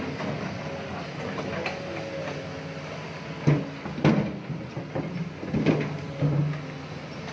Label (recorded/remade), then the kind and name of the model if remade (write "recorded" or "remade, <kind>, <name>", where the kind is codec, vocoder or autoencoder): recorded